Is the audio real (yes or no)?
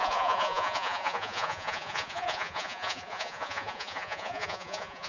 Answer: no